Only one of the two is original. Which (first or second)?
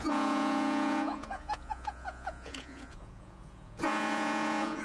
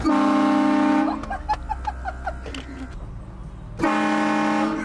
second